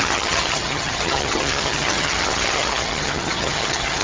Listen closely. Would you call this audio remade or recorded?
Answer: remade